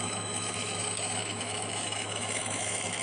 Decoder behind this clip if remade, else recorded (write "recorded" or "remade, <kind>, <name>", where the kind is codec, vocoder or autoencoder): remade, autoencoder, DAC-VAE